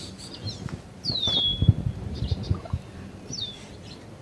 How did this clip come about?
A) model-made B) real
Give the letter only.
A